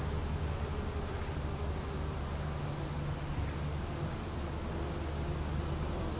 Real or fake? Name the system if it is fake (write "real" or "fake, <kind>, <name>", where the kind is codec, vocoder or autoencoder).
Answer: real